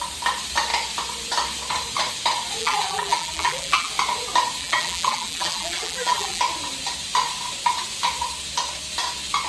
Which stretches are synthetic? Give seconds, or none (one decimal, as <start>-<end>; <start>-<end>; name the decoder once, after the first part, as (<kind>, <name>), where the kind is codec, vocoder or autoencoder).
2.6-3.9 (vocoder, BigVGAN v2); 4.6-6.4